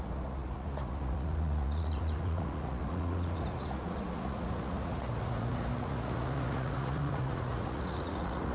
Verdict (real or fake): fake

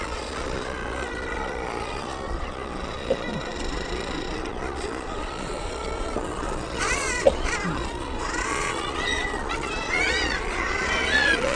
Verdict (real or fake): fake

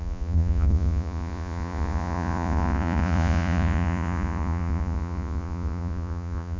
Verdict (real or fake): fake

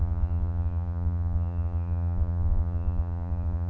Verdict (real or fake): fake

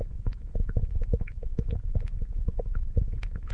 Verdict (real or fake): fake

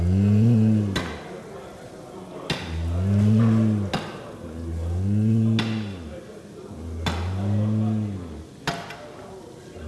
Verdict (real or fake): real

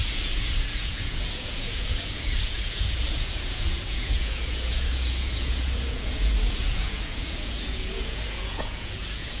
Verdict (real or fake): fake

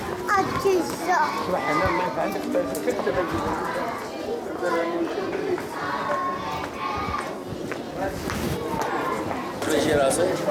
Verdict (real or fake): real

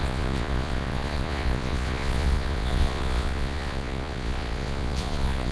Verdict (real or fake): fake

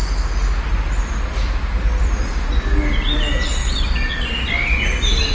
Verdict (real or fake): real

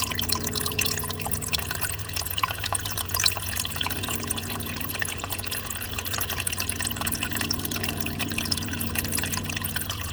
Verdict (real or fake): fake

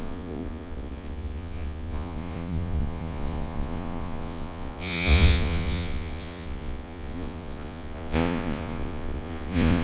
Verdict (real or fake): fake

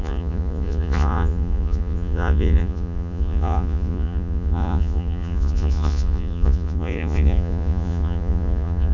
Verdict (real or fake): fake